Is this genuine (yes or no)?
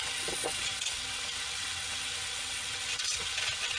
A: no